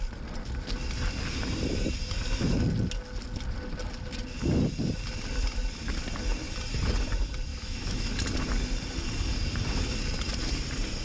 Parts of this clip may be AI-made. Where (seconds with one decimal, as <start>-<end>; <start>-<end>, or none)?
7.5-8.1